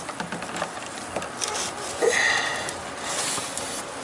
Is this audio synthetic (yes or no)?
no